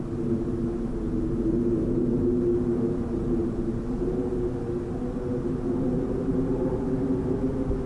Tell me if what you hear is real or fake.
real